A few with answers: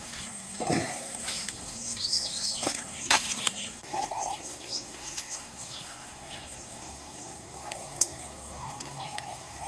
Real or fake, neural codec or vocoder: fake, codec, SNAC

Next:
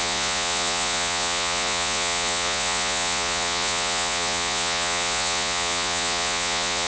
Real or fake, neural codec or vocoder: fake, vocoder, Vocos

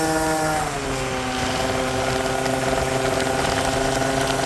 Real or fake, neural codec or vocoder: real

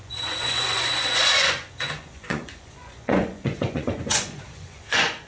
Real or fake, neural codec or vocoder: fake, vocoder, Vocos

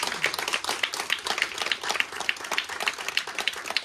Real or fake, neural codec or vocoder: fake, vocoder, BigVGAN v2